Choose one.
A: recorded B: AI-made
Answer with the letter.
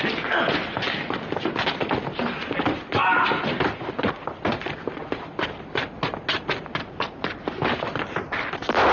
A